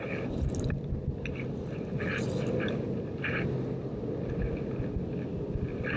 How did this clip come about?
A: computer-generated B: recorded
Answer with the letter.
B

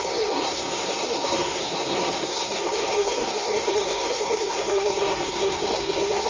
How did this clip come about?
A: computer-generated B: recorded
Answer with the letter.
A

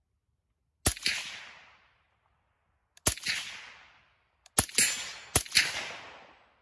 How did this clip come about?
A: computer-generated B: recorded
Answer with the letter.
B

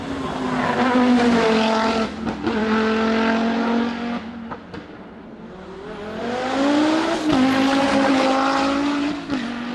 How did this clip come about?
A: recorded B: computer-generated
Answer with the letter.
A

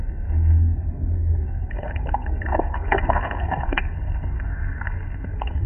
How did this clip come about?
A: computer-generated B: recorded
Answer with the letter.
A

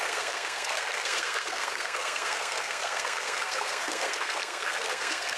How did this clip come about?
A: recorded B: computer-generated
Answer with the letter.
B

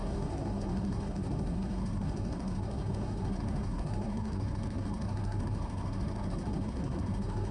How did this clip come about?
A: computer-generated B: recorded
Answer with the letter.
A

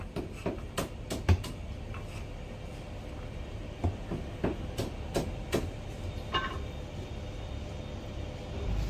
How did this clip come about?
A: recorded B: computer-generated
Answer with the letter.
A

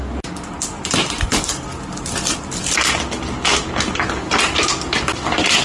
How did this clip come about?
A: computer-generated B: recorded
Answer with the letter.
B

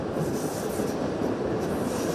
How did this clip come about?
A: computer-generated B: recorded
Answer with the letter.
B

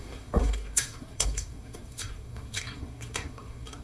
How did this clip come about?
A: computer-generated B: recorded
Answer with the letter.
A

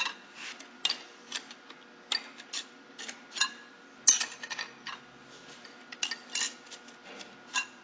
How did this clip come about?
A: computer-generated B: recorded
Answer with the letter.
B